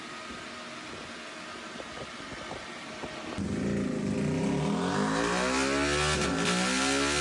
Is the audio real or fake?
real